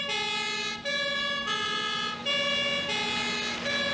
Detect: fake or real real